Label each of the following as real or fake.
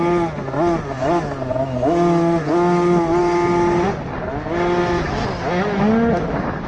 real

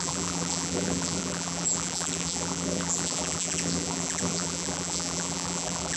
fake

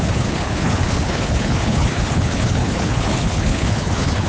fake